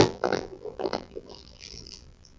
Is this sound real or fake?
fake